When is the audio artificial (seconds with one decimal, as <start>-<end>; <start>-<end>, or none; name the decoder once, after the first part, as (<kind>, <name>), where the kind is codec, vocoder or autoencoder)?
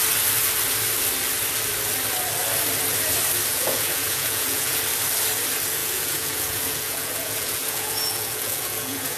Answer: 3.5-4.8 (vocoder, Vocos); 5.8-9.2